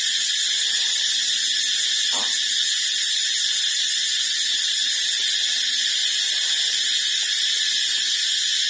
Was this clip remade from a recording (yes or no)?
no